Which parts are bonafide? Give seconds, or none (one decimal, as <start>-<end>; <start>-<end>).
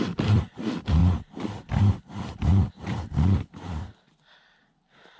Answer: none